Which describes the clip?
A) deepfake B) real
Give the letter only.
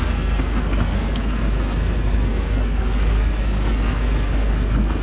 A